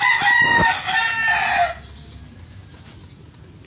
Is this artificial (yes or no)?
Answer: no